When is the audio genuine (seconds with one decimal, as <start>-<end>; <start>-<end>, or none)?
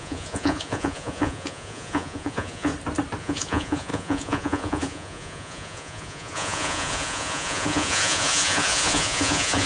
2.7-3.2